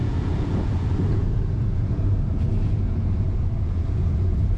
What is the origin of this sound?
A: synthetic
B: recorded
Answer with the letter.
A